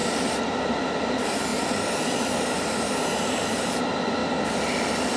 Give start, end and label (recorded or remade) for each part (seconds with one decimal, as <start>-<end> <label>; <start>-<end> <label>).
0.0-0.6 remade; 0.6-1.5 recorded; 1.5-3.7 remade; 3.7-4.2 recorded; 4.2-4.8 remade; 4.8-5.2 recorded